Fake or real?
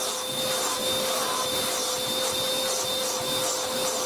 real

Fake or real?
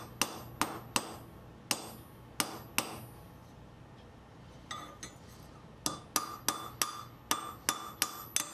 real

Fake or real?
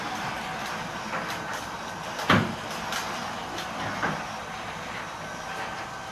real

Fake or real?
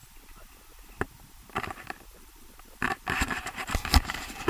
fake